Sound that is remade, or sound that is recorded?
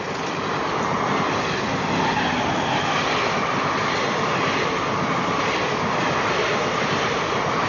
recorded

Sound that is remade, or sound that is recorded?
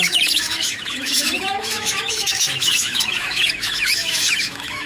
remade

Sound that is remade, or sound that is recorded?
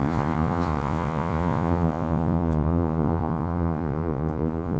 remade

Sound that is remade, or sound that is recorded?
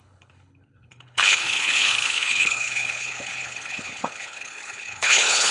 remade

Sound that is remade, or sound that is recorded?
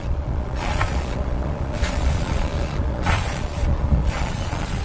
remade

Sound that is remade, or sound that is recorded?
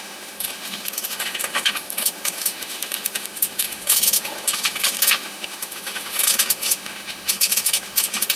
remade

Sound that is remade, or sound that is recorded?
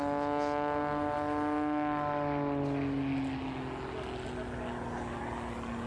recorded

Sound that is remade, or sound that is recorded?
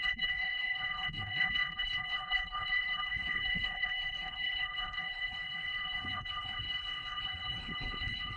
remade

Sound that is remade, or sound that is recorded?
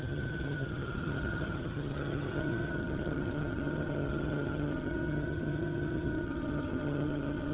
remade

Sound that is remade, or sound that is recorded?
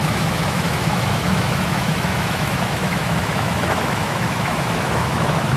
remade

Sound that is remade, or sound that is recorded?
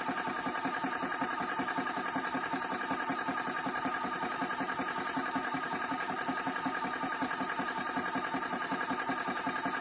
recorded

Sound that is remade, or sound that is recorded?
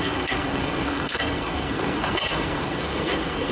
remade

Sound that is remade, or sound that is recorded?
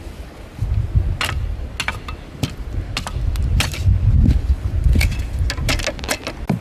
recorded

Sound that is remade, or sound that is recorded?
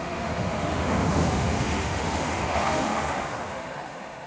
remade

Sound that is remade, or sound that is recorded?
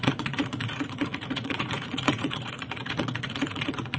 remade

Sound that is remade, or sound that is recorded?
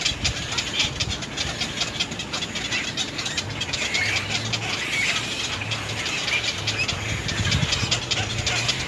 recorded